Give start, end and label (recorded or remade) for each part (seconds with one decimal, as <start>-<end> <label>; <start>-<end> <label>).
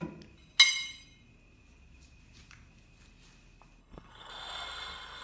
0.0-3.8 recorded; 3.8-4.3 remade; 4.3-5.2 recorded